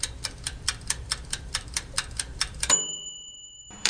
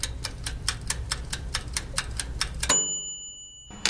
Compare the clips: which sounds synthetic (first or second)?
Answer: first